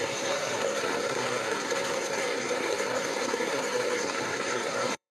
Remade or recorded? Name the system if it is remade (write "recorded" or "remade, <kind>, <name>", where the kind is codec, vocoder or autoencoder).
remade, codec, SNAC